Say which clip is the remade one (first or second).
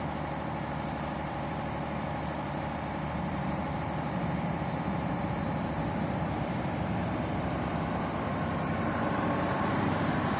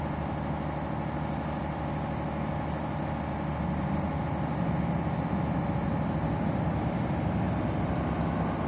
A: first